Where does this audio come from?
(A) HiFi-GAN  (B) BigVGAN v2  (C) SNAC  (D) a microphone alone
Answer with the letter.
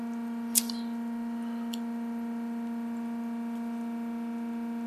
D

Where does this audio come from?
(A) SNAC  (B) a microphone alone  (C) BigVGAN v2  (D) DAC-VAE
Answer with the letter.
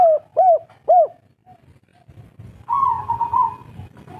B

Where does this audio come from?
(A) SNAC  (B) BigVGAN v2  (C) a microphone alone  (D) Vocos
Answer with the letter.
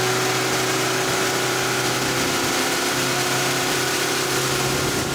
C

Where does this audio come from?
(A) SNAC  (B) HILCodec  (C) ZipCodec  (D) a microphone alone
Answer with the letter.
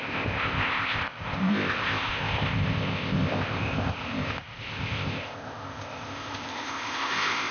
C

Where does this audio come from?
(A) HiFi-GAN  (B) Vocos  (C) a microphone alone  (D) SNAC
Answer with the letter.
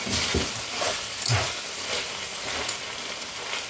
C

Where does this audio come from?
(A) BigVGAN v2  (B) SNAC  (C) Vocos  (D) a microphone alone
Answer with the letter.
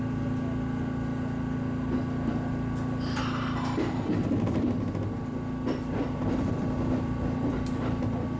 D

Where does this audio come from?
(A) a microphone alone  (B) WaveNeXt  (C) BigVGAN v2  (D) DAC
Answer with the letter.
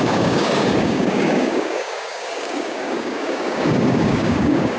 D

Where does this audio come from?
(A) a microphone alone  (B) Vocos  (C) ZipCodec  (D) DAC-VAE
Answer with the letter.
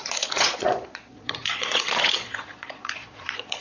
B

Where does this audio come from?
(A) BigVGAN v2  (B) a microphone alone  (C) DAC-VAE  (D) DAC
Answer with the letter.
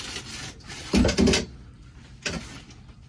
B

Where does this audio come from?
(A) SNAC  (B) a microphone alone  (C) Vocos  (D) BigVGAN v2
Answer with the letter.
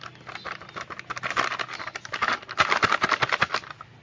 B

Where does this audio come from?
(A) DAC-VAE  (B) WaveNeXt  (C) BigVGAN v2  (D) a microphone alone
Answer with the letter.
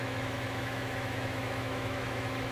A